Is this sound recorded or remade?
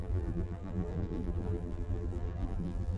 remade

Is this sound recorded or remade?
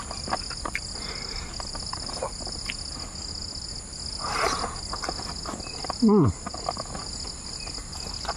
recorded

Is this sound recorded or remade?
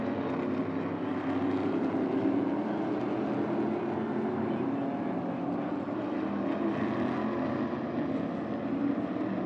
recorded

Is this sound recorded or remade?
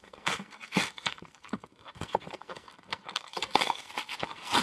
remade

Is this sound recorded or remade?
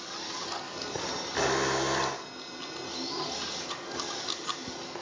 recorded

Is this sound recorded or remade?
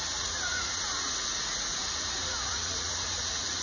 remade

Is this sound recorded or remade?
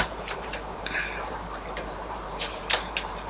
remade